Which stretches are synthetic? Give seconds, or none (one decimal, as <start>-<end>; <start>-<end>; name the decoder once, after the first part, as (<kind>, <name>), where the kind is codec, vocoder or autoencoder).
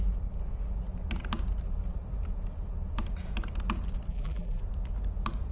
4.1-4.6 (vocoder, BigVGAN v2)